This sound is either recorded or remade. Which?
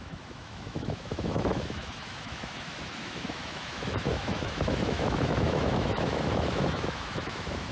remade